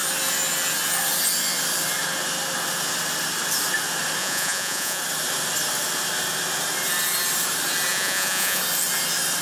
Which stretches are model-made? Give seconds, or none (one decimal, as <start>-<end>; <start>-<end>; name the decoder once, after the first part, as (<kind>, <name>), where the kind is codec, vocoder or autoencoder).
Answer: 4.2-5.0 (vocoder, Vocos); 7.9-8.6